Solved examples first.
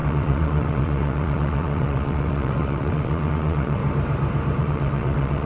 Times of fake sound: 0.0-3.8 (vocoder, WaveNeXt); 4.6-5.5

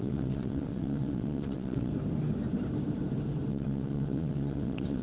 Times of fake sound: 0.0-1.9 (vocoder, WaveNeXt); 3.5-5.0

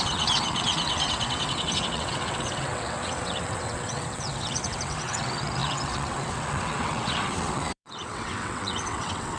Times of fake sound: 0.0-9.4 (vocoder, WaveNeXt)

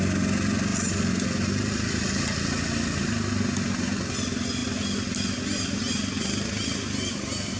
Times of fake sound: none

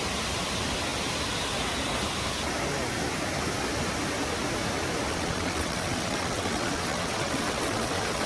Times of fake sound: 5.1-8.3 (vocoder, WaveNeXt)

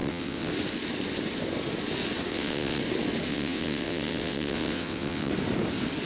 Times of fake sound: 0.0-0.5 (vocoder, WaveNeXt); 2.3-2.8; 3.3-5.3

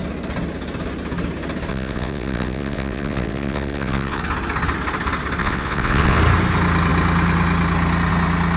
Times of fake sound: 1.7-4.2 (vocoder, WaveNeXt); 5.4-6.2